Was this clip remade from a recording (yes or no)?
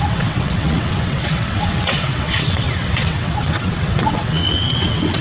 yes